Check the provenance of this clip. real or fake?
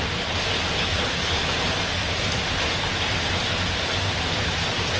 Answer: real